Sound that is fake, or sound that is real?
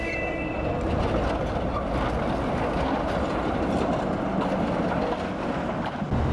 real